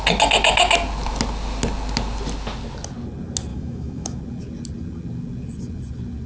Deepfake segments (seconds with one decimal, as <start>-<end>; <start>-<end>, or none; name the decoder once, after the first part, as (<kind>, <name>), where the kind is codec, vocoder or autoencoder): 3.5-4.2 (autoencoder, DAC-VAE)